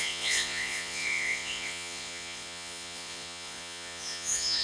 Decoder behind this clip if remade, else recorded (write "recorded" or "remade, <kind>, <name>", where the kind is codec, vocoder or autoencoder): remade, vocoder, Vocos